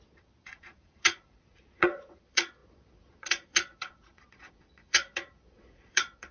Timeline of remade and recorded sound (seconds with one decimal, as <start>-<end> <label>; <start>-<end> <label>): 0.0-6.3 remade